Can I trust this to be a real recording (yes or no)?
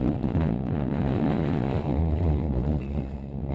no